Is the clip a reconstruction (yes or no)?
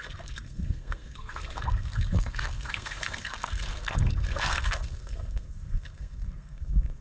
yes